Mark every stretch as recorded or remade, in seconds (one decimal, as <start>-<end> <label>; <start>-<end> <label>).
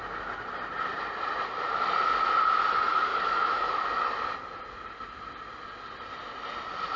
0.0-3.1 recorded; 3.1-4.0 remade; 4.0-7.0 recorded